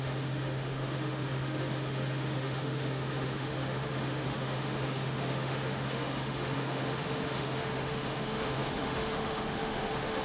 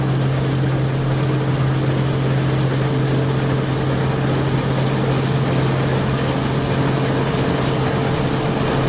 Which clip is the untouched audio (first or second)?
second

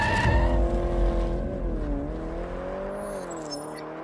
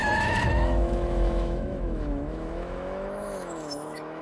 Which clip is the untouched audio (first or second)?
first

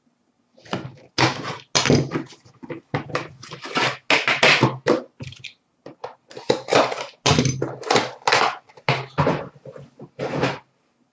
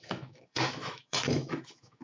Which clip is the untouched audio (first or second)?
first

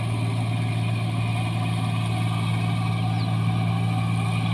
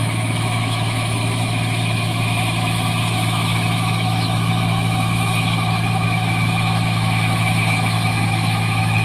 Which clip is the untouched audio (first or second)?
first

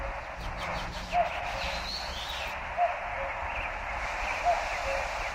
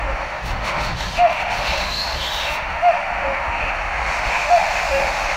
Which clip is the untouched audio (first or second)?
first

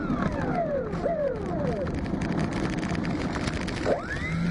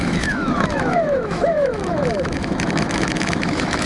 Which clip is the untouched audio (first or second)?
first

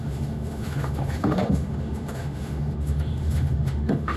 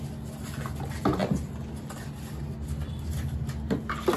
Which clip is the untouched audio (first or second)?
second